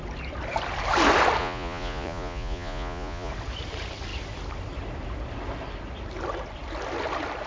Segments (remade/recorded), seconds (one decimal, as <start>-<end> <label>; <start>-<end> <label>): 0.0-1.4 recorded; 1.4-3.3 remade; 3.3-7.5 recorded